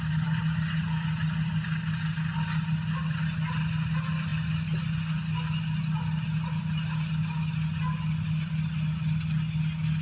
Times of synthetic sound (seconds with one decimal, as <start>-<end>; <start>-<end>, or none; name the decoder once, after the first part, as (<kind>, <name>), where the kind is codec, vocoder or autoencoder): none